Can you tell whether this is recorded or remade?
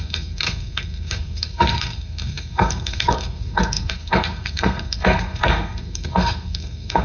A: remade